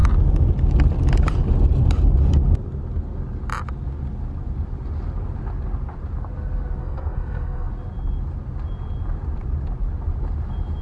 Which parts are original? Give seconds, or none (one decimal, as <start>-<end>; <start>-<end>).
0.0-6.8; 7.7-10.8